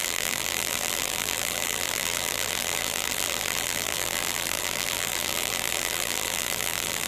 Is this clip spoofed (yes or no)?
yes